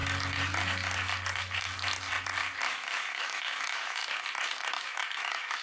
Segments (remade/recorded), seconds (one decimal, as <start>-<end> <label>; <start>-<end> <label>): 0.0-2.7 recorded; 2.7-4.0 remade; 4.0-4.5 recorded; 4.5-5.6 remade